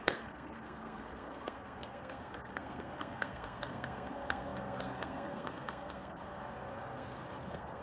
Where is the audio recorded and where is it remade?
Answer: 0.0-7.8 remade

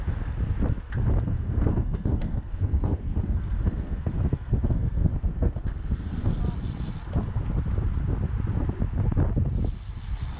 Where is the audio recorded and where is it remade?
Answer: 0.0-1.3 recorded; 1.3-6.4 remade; 6.4-10.4 recorded

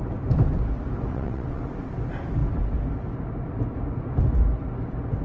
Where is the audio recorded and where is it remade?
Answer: 0.0-1.1 recorded; 1.1-1.6 remade; 1.6-5.2 recorded

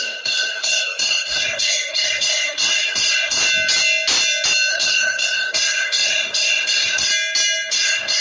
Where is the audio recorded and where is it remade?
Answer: 0.0-3.4 remade; 3.4-4.7 recorded; 4.7-7.1 remade; 7.1-7.7 recorded; 7.7-8.2 remade

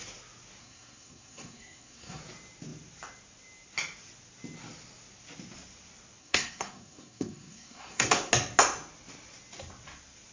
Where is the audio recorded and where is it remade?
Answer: 0.0-0.6 recorded; 0.6-2.2 remade; 2.2-6.2 recorded; 6.2-8.3 remade; 8.3-10.3 recorded

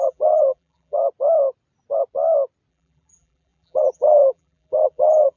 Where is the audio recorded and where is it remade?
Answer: 0.0-1.0 remade; 1.0-2.7 recorded; 2.7-5.4 remade